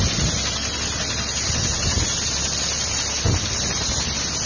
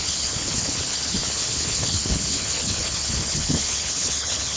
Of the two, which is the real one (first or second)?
first